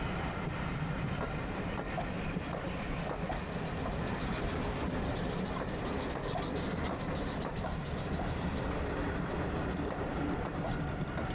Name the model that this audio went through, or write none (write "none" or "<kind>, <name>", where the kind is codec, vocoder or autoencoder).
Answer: none